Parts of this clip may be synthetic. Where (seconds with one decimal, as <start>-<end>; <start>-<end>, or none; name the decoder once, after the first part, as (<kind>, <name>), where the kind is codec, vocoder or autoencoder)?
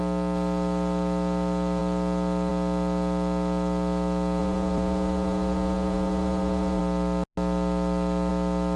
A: 4.4-6.8 (vocoder, Vocos)